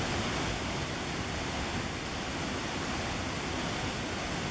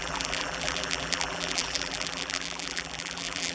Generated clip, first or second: second